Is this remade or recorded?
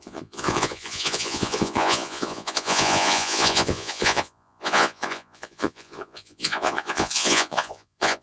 remade